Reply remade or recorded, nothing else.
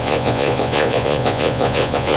remade